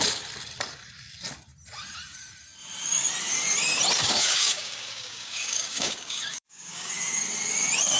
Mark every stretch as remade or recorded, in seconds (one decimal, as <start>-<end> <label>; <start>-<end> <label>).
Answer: 0.0-4.0 recorded; 4.0-6.9 remade; 6.9-8.0 recorded